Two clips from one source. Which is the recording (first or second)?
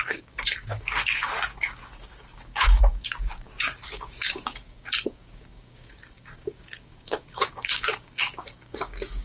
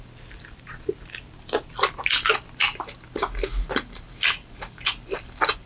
second